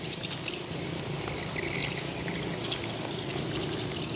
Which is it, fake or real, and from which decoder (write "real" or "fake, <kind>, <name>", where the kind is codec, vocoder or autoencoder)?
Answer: real